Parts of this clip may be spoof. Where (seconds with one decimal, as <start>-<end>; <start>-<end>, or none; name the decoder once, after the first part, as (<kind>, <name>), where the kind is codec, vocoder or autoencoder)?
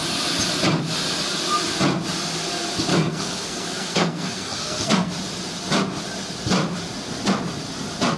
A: 2.9-5.1 (codec, SNAC)